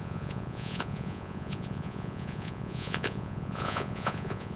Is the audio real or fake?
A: fake